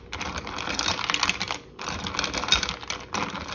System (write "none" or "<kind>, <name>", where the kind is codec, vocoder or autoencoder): none